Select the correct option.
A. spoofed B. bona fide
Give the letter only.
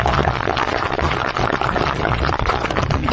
A